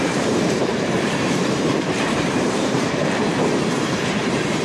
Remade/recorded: remade